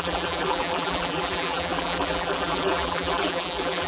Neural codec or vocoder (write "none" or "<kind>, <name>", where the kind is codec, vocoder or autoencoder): vocoder, BigVGAN v2